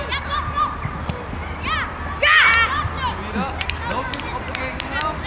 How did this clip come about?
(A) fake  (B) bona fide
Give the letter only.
B